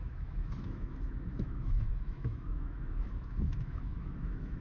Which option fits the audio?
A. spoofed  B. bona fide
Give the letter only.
A